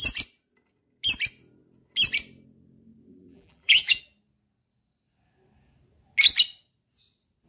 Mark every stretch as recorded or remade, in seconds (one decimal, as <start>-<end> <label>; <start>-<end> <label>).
0.0-3.1 recorded; 3.1-4.0 remade; 4.0-7.5 recorded